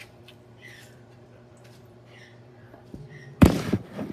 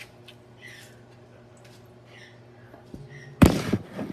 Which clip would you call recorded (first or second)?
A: second